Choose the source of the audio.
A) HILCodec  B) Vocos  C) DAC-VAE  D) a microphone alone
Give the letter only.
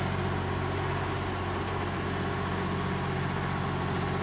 D